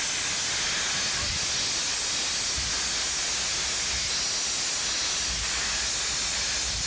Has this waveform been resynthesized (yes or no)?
no